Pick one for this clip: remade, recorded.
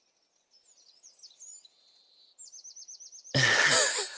recorded